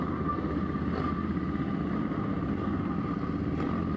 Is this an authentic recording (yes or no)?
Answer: yes